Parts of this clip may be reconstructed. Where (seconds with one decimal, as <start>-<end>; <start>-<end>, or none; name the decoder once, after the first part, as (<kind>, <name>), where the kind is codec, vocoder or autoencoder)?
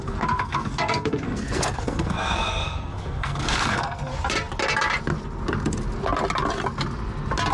0.0-4.1 (codec, SNAC)